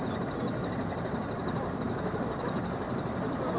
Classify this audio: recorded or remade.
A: recorded